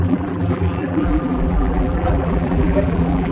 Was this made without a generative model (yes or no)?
no